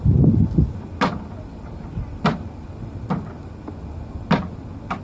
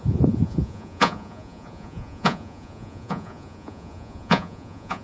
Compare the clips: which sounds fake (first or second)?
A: second